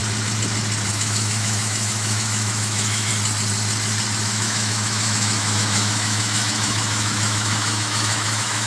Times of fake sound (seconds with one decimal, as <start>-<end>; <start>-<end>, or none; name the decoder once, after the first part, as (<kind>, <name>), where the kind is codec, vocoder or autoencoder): 0.9-3.1 (autoencoder, DAC-VAE); 4.2-8.7